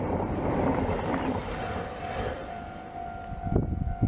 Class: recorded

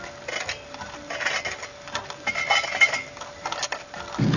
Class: recorded